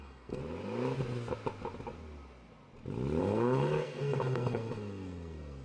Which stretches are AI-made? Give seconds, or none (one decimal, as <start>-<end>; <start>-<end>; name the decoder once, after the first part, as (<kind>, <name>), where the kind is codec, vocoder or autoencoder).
0.0-0.4 (codec, SNAC); 3.2-5.6